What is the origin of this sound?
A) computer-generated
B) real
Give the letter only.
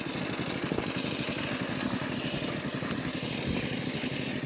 B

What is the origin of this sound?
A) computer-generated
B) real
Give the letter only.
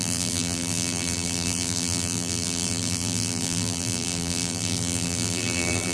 A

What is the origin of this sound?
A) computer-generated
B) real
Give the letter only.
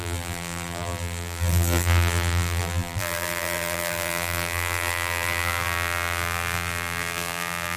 A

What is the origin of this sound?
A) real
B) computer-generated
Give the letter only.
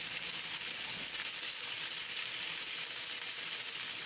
A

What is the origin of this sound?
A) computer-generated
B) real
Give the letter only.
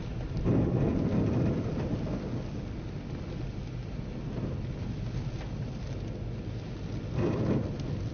B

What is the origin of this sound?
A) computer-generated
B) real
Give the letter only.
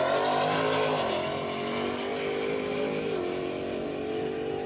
A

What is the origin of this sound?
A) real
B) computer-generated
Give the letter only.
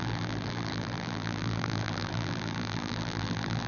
B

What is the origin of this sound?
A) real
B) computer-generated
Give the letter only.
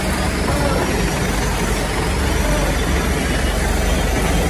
A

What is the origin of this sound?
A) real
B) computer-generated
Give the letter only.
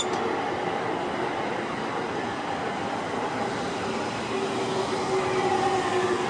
A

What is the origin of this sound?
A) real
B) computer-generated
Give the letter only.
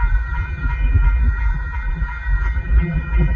B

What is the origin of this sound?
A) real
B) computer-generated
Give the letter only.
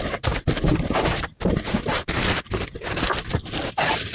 B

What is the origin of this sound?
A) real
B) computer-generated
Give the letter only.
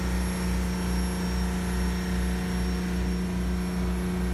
A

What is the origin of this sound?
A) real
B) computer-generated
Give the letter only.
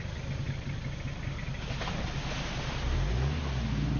A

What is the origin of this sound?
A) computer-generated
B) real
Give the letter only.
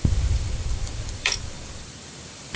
A